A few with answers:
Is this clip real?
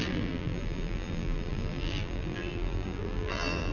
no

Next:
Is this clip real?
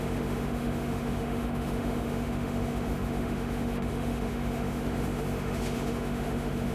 no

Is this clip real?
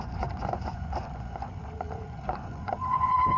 no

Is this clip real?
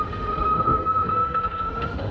no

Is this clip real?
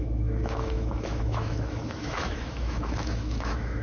no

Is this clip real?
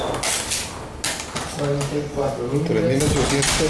yes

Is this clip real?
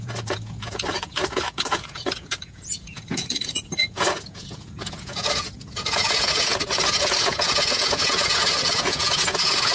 no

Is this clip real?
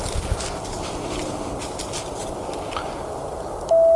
yes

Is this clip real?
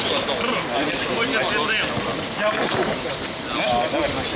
yes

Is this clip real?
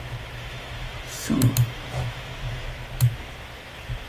no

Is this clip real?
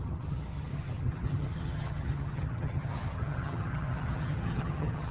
no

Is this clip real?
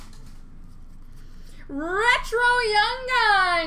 yes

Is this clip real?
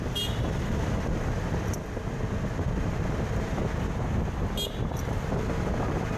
yes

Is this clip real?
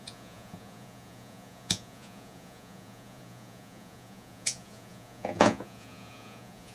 no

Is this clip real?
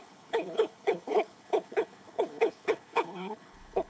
no